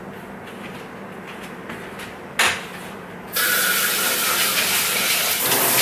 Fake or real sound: real